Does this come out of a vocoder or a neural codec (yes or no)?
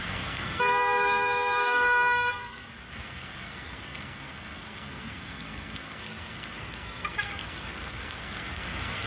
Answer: yes